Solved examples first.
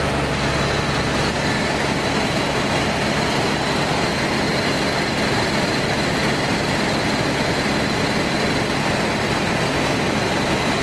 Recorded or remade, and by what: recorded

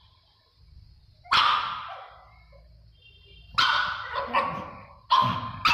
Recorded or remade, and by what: recorded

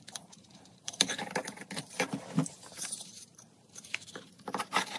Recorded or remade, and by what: remade, vocoder, BigVGAN v2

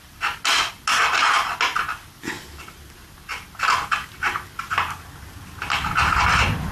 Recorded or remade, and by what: recorded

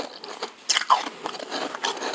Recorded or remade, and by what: recorded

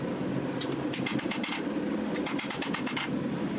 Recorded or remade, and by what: recorded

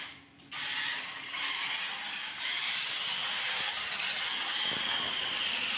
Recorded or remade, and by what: remade, vocoder, BigVGAN v2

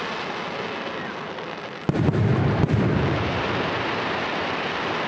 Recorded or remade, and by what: recorded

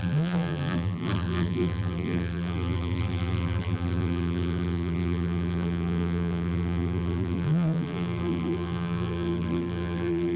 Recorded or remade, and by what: remade, vocoder, BigVGAN v2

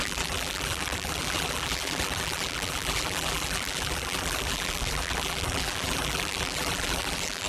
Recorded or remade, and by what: remade, vocoder, BigVGAN v2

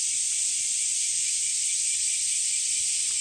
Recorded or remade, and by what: recorded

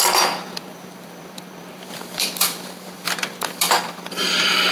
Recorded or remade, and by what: remade, vocoder, BigVGAN v2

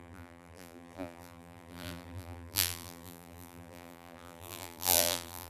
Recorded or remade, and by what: remade, vocoder, BigVGAN v2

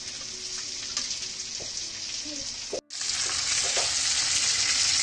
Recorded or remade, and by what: recorded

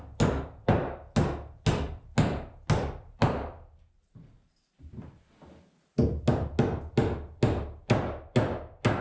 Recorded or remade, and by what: recorded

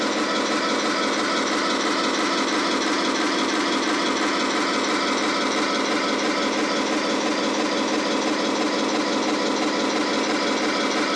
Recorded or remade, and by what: recorded